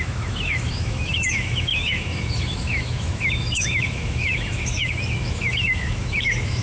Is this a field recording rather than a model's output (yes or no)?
no